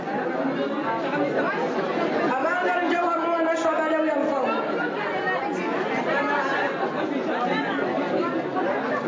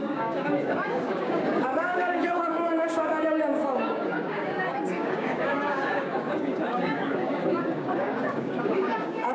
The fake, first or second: second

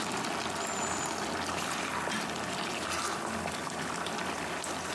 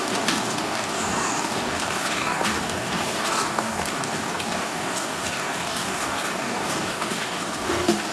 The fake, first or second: second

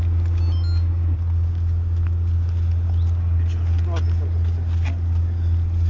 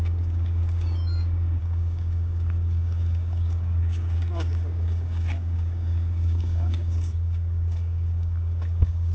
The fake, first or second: second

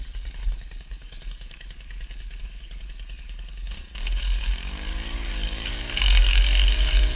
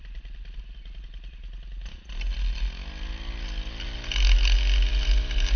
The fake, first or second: first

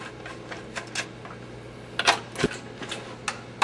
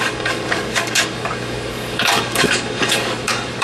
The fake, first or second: second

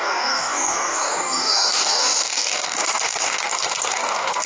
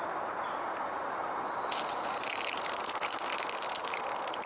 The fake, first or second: first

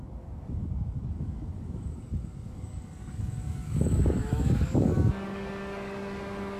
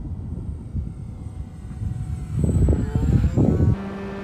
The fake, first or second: first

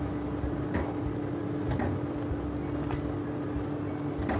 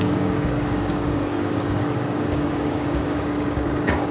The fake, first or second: second